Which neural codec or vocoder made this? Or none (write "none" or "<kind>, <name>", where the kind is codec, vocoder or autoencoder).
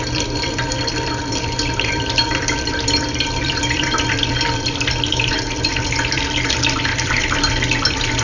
vocoder, BigVGAN v2